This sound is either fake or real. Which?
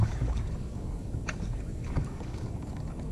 fake